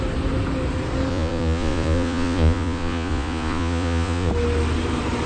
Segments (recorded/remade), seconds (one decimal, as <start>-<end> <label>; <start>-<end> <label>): 0.0-1.1 recorded; 1.1-4.3 remade; 4.3-5.3 recorded